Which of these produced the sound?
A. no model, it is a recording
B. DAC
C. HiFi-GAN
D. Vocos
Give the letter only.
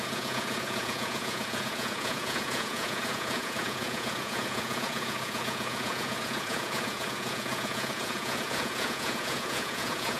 D